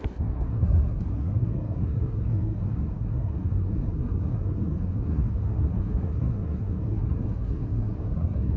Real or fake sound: fake